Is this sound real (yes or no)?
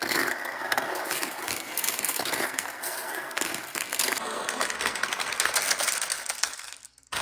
no